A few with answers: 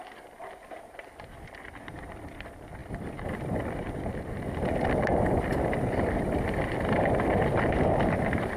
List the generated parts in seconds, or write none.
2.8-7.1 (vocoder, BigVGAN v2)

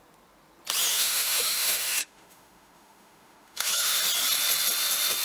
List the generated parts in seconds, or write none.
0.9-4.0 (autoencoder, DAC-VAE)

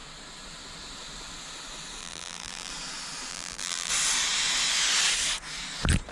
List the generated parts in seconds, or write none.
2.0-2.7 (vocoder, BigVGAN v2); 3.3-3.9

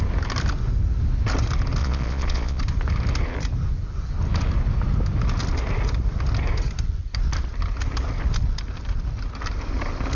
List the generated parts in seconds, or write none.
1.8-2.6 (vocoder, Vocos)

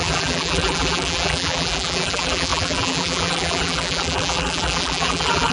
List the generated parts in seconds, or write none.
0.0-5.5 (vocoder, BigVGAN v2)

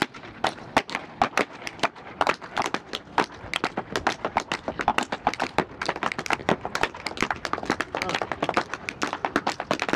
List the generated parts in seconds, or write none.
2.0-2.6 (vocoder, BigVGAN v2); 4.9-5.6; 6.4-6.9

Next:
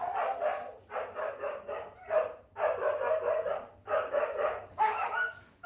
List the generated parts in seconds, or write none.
none